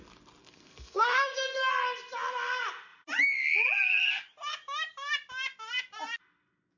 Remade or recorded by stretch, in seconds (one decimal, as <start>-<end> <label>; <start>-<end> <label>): 0.0-0.4 recorded; 0.4-1.7 remade; 1.7-6.8 recorded